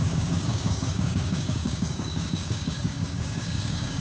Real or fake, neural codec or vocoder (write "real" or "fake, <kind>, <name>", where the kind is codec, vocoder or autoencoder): fake, codec, DAC